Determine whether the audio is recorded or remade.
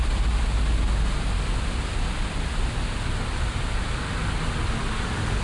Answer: recorded